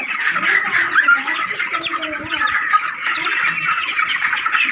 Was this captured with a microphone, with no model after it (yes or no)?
yes